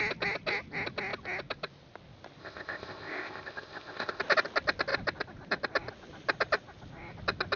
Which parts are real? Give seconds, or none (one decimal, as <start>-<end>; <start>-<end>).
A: 0.0-2.4; 4.2-7.6